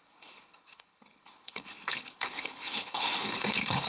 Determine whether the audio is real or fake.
fake